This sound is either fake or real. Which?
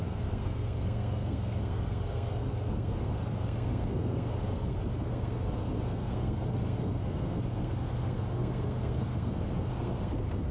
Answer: fake